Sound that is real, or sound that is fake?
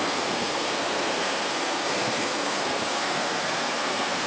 fake